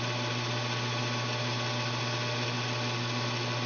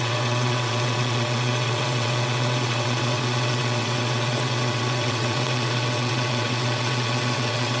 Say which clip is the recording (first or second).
first